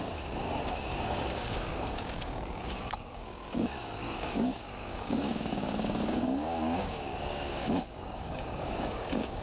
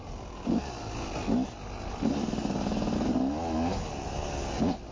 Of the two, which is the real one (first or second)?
second